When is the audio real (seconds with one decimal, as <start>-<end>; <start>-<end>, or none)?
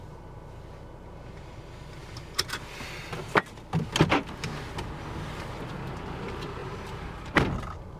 0.0-6.6; 7.5-8.0